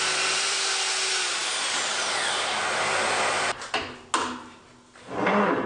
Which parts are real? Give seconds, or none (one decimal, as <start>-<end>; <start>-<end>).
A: 0.0-5.7